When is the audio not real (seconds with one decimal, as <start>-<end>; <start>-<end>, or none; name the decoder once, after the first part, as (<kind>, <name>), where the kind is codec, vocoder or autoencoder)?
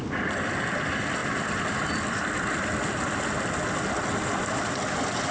none